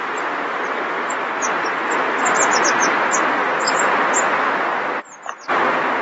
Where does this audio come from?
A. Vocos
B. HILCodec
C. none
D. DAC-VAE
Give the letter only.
C